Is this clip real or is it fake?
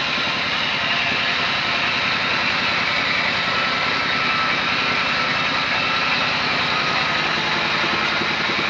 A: real